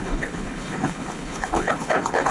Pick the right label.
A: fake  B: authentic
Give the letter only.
A